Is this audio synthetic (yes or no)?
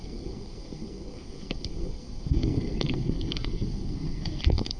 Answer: yes